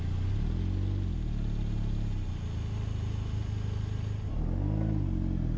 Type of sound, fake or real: real